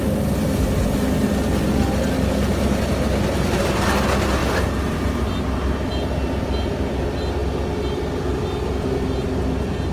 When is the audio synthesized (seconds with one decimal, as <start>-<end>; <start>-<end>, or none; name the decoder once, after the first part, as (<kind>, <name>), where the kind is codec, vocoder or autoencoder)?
none